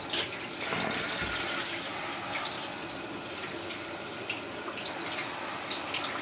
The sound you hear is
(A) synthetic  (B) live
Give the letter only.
A